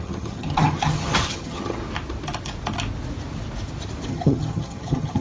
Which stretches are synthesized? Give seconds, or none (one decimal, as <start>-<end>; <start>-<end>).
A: 0.0-1.8; 4.1-5.2